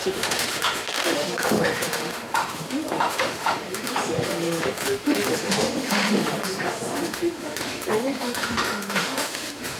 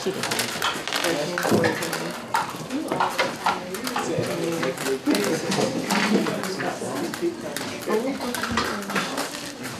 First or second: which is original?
second